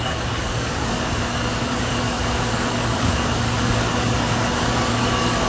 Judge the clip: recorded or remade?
remade